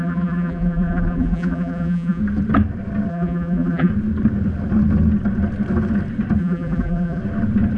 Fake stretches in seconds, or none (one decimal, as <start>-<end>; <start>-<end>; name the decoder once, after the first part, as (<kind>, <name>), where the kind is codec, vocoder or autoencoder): 0.0-2.2 (vocoder, BigVGAN v2); 3.1-3.9; 6.4-7.2